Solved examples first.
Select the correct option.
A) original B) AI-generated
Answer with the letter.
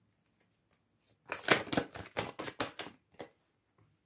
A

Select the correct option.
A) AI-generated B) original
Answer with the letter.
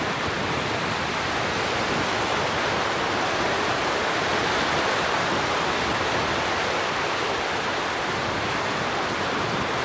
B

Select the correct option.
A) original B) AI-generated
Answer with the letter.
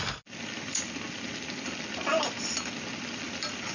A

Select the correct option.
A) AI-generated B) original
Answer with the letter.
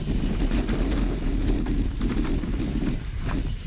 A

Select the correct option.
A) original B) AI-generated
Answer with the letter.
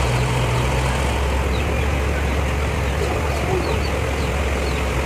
A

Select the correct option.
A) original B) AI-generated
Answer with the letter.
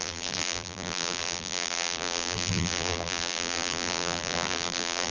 B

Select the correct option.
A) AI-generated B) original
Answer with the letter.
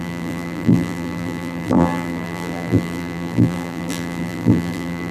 A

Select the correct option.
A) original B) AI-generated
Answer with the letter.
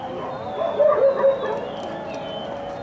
A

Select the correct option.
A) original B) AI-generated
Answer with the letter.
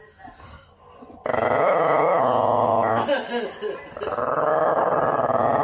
A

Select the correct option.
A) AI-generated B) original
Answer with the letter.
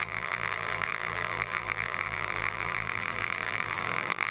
A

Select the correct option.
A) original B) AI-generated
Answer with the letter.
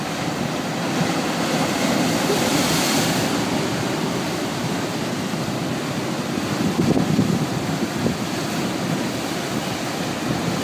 B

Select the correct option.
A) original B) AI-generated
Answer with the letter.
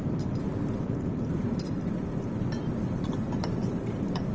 B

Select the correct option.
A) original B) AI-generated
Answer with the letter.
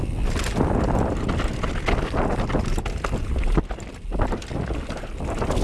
A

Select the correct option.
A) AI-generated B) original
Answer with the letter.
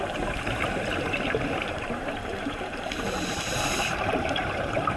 A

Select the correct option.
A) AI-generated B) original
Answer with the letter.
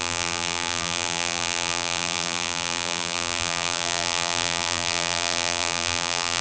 A